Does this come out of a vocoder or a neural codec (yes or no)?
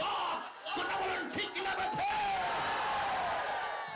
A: no